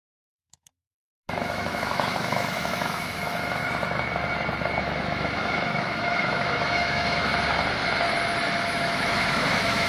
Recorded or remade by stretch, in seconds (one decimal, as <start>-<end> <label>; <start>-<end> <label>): 0.0-3.6 remade; 3.6-4.8 recorded; 4.8-7.3 remade; 7.3-8.6 recorded; 8.6-9.9 remade